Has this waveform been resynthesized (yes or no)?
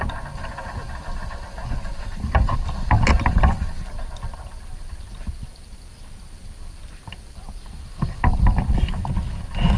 no